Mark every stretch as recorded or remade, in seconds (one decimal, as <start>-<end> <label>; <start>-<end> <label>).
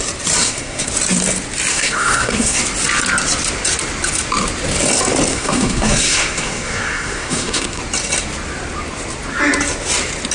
0.0-0.4 recorded; 0.4-0.9 remade; 0.9-1.7 recorded; 1.7-2.6 remade; 2.6-5.3 recorded; 5.3-7.8 remade; 7.8-10.3 recorded